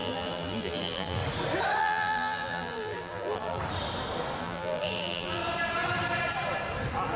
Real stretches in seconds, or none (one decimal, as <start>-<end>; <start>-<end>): 1.2-1.8; 3.6-4.4; 5.4-7.2